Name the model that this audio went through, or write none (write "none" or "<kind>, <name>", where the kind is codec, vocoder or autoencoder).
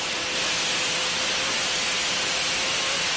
none